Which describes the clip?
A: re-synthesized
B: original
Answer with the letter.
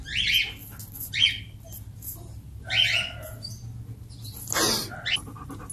B